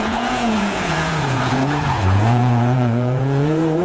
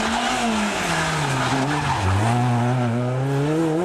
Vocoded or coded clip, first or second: first